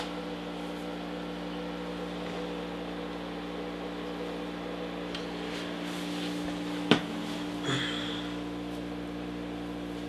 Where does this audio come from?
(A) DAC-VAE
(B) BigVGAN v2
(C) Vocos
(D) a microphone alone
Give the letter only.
D